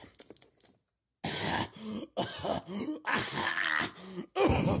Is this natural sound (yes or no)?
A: yes